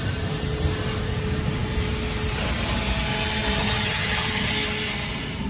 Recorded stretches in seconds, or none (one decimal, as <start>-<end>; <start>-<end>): 0.0-3.6; 4.5-5.5